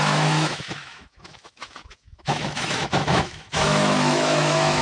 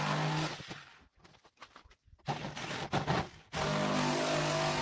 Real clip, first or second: second